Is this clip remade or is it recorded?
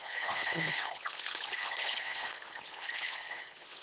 remade